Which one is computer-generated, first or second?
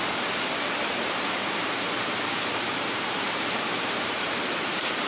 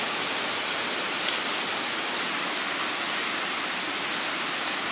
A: first